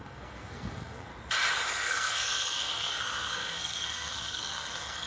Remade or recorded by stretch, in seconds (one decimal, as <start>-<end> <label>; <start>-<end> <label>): 0.0-1.1 remade; 1.1-1.7 recorded; 1.7-5.1 remade